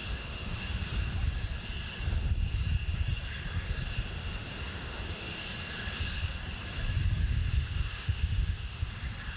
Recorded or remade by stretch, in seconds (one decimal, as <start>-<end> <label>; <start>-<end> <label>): 0.0-0.8 remade; 0.8-4.2 recorded; 4.2-5.4 remade; 5.4-7.2 recorded; 7.2-8.9 remade; 8.9-9.4 recorded